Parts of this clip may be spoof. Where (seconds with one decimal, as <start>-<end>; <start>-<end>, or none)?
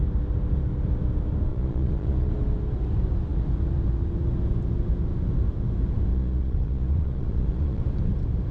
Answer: 1.5-2.3; 6.1-7.8